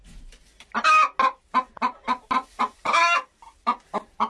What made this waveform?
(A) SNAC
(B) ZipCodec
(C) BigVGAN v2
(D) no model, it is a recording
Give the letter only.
D